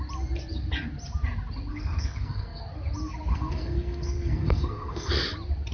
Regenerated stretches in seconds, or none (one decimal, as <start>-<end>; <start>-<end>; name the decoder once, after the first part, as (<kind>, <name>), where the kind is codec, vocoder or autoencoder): 1.7-2.6 (codec, SNAC); 3.3-5.1

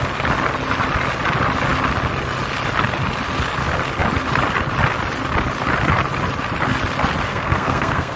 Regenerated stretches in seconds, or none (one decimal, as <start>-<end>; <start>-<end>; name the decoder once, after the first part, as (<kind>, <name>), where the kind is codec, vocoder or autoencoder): 7.3-8.2 (codec, SNAC)

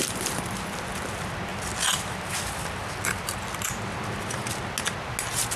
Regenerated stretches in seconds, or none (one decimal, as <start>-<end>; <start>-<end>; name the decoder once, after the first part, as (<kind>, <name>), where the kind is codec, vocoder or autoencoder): none